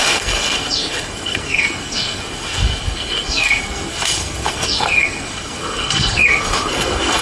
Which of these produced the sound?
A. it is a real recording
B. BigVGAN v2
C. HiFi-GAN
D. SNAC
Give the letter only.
D